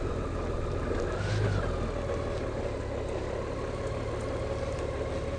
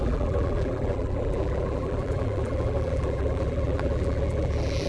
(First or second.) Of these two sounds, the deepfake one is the second